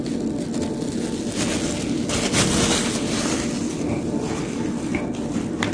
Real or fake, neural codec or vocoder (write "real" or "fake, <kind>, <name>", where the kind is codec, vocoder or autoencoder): real